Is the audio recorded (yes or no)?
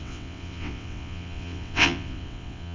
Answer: no